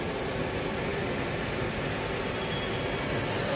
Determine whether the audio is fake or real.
real